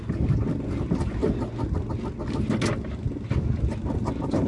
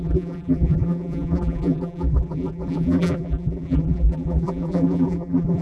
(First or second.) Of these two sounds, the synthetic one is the second